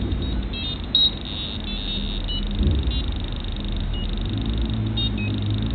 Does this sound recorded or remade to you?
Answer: recorded